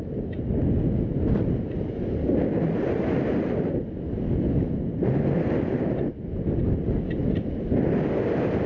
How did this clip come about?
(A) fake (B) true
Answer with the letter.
B